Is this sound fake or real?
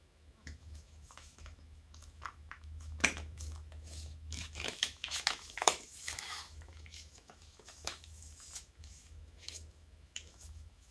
fake